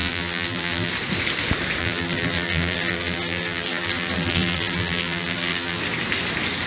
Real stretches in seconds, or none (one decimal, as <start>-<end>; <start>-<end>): 0.9-1.8; 5.8-6.7